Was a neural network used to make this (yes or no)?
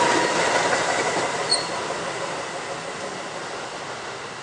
no